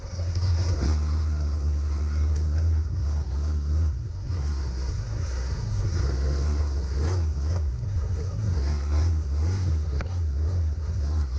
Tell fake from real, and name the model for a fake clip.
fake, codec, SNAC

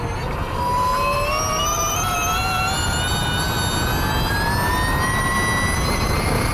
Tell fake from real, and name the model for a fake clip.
real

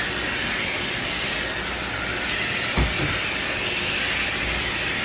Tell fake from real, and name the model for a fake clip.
real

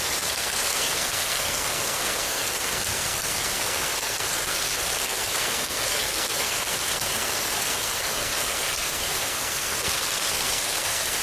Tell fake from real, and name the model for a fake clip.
fake, codec, SNAC